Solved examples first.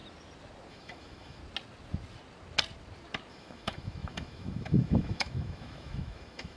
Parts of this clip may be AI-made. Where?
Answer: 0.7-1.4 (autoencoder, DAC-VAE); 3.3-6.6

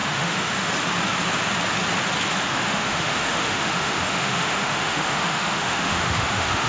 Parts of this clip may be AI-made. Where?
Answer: 0.0-0.7 (autoencoder, DAC-VAE); 2.5-6.7

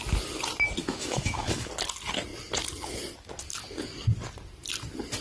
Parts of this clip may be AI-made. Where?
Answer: 0.8-1.7 (autoencoder, DAC-VAE)